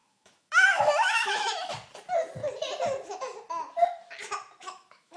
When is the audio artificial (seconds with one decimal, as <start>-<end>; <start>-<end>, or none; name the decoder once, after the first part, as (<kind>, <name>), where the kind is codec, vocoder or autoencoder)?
0.0-1.7 (autoencoder, DAC-VAE); 4.6-5.2